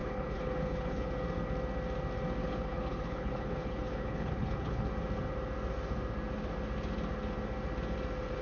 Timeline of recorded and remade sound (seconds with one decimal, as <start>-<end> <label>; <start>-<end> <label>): 0.0-1.1 remade; 1.1-2.4 recorded; 2.4-4.9 remade; 4.9-8.4 recorded

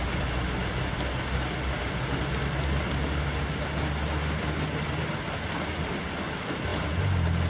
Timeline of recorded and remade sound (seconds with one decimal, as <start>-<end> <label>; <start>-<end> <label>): 0.0-7.5 recorded

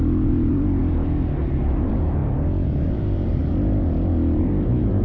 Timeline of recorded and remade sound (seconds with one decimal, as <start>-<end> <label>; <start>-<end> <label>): 0.0-0.8 remade; 0.8-1.4 recorded; 1.4-2.2 remade; 2.2-2.9 recorded; 2.9-3.4 remade; 3.4-4.4 recorded; 4.4-5.0 remade

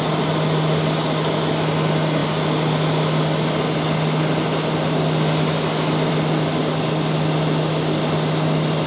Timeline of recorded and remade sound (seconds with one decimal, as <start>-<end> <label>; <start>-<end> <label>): 0.0-8.9 recorded

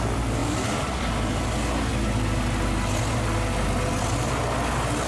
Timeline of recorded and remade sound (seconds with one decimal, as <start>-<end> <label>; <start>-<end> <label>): 0.0-5.1 recorded

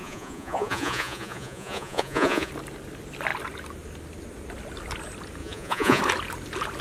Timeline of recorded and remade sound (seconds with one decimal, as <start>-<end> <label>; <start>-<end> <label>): 0.0-2.5 remade; 2.5-5.4 recorded; 5.4-6.0 remade; 6.0-6.8 recorded

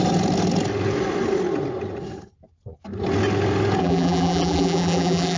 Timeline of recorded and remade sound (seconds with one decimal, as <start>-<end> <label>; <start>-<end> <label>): 0.0-3.8 recorded; 3.8-5.4 remade